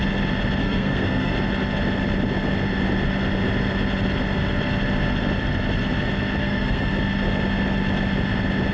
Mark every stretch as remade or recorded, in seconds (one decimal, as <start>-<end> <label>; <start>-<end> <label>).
0.0-0.6 recorded; 0.6-1.3 remade; 1.3-6.4 recorded; 6.4-6.9 remade; 6.9-8.7 recorded